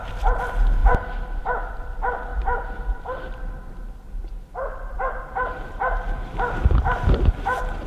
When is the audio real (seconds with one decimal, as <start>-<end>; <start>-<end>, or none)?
0.0-7.9